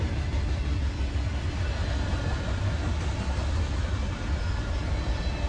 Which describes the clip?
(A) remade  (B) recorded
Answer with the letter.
B